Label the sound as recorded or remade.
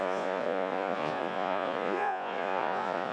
remade